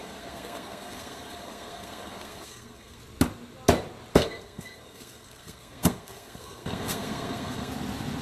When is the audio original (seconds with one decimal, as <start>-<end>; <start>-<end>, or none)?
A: 3.0-4.1; 7.7-8.2